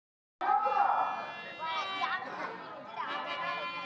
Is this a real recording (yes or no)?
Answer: yes